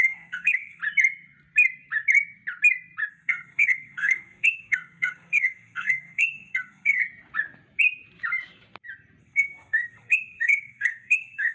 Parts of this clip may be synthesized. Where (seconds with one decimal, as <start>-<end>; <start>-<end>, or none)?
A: 0.0-0.8; 3.1-7.0; 9.2-11.5